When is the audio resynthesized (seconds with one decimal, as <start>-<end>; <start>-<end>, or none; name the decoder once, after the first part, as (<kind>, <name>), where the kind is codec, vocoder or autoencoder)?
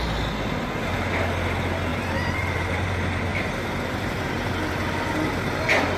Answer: 1.9-2.9 (vocoder, BigVGAN v2); 3.3-4.5